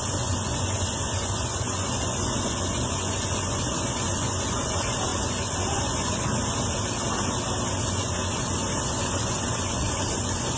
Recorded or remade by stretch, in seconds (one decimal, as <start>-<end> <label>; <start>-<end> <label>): 0.0-6.3 remade; 6.3-7.8 recorded; 7.8-10.6 remade